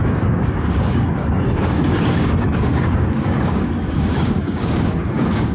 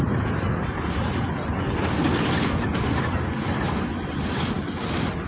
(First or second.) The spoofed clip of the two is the first